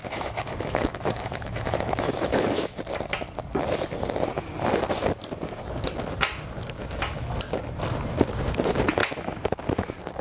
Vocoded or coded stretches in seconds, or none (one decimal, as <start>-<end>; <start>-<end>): 0.0-2.8; 6.8-7.4; 9.0-9.6